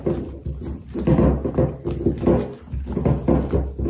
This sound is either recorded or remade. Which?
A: recorded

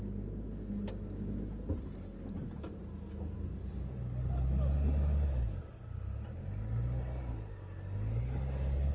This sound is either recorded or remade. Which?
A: recorded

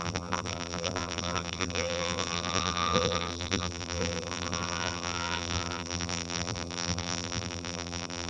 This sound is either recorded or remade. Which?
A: remade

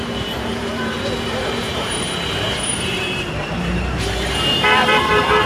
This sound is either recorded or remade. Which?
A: remade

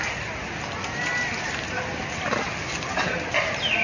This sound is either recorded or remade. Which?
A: recorded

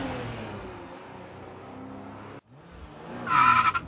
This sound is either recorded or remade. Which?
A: recorded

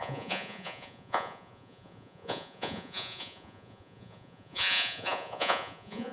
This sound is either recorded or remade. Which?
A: remade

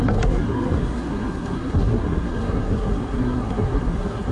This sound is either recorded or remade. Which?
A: remade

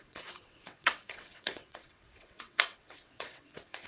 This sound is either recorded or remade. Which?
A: remade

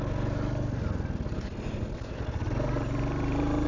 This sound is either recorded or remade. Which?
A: recorded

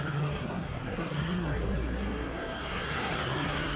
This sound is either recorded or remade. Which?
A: remade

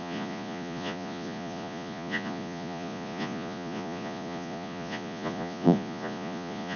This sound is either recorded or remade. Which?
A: remade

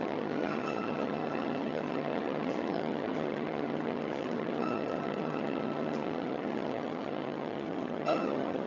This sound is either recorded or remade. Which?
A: remade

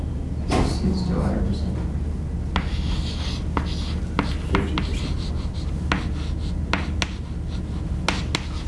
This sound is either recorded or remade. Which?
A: recorded